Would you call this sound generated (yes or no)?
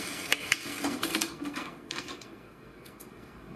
yes